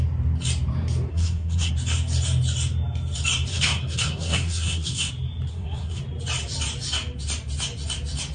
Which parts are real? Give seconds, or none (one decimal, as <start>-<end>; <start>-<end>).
0.0-1.1; 1.7-3.5; 5.1-5.5; 6.0-8.3